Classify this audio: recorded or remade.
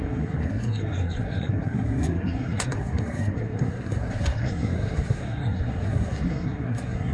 remade